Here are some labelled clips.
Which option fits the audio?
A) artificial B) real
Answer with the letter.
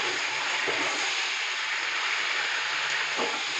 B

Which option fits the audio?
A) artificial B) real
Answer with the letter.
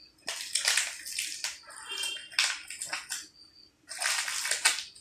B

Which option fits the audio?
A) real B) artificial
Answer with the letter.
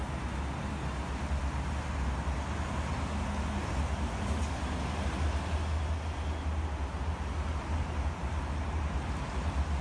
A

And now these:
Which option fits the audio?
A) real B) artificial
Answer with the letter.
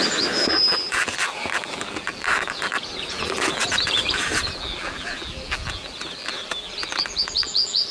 B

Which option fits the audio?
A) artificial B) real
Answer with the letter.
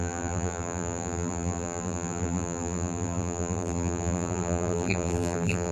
A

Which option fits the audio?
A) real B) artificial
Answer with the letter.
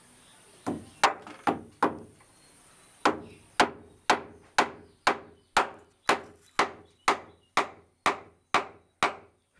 A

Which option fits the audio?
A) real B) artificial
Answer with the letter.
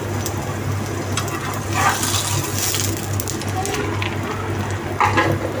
A